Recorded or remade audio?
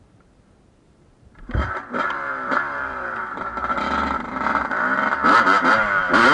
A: remade